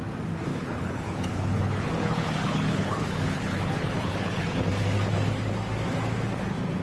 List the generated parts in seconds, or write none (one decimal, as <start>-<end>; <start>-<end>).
0.5-4.6